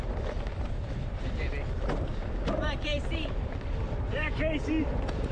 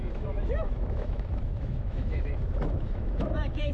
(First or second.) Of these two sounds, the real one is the first